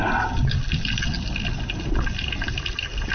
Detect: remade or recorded recorded